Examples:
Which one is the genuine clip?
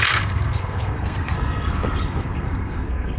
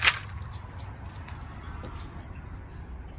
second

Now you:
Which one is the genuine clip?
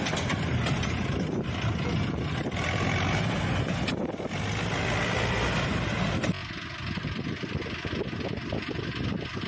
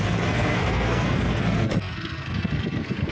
first